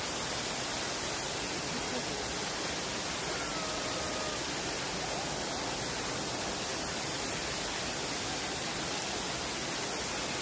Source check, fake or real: real